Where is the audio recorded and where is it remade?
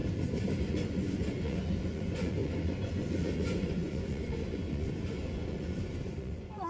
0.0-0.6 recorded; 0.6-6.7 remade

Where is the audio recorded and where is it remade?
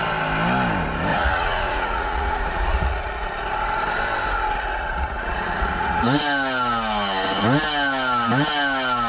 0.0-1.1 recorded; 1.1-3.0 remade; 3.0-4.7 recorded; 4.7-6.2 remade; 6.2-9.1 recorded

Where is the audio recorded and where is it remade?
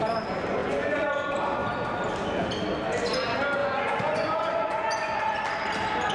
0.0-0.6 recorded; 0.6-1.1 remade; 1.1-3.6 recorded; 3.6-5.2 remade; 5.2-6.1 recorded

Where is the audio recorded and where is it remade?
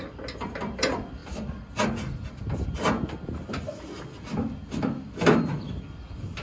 0.0-6.4 recorded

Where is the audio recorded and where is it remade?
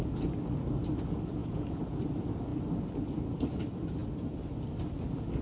0.0-1.4 recorded; 1.4-2.0 remade; 2.0-5.4 recorded